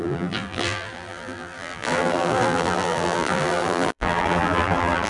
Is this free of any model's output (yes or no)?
no